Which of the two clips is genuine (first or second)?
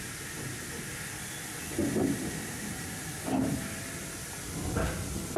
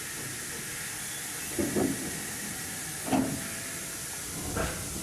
second